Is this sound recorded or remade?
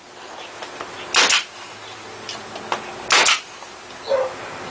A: recorded